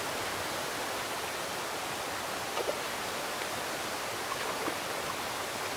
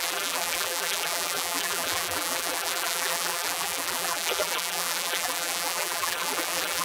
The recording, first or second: first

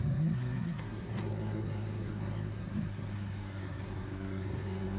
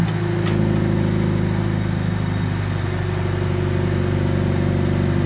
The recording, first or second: second